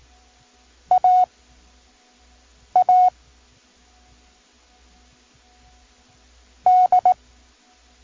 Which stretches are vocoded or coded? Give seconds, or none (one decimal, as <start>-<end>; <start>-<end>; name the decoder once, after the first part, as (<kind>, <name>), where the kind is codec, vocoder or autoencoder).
none